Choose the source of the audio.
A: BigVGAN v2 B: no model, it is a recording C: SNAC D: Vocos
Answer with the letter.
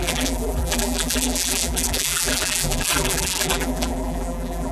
A